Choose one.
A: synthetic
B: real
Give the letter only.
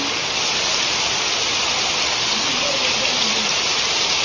B